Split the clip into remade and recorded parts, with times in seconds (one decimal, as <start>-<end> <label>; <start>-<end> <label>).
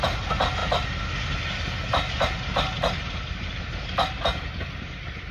0.0-5.3 recorded